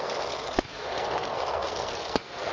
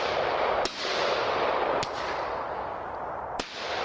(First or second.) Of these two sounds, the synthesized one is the first